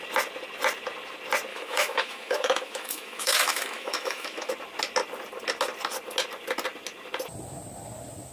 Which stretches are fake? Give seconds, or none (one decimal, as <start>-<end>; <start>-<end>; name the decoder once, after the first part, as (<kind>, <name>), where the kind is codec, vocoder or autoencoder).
1.5-4.5 (autoencoder, DAC-VAE)